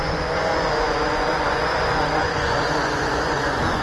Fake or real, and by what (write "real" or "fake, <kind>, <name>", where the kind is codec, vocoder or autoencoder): fake, vocoder, Vocos